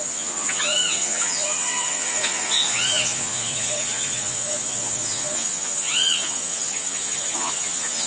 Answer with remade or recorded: remade